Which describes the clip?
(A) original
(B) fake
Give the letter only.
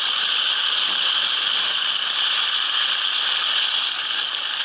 A